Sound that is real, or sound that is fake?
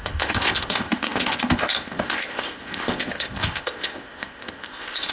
fake